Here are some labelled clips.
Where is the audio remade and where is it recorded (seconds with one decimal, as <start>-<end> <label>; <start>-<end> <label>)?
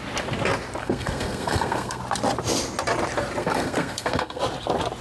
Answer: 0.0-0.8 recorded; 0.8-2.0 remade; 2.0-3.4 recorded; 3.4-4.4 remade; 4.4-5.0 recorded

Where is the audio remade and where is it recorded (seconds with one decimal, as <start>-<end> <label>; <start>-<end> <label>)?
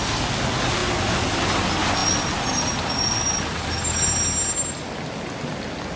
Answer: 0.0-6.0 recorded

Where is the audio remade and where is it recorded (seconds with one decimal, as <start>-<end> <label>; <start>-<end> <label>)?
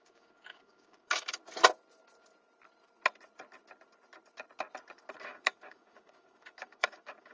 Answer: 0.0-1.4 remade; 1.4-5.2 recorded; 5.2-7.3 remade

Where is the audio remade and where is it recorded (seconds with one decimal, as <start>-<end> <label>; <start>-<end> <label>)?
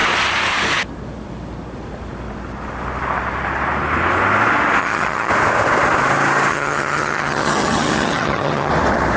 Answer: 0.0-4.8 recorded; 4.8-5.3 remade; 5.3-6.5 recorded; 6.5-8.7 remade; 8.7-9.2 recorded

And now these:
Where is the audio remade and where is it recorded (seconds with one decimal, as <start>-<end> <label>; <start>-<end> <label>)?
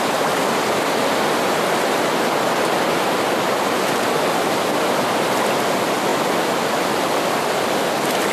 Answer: 0.0-8.3 recorded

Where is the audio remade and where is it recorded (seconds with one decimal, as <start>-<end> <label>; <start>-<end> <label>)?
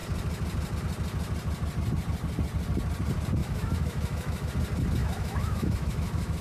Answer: 0.0-3.4 recorded; 3.4-4.5 remade; 4.5-5.0 recorded; 5.0-6.4 remade